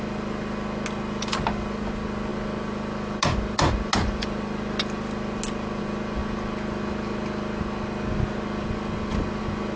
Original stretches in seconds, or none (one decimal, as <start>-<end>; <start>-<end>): 0.0-9.8